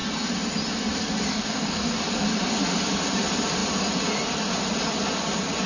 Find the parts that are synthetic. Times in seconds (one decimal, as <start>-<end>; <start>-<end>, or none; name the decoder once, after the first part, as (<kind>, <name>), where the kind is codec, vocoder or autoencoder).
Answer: 1.3-2.0 (codec, DAC)